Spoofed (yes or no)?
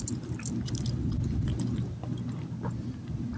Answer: yes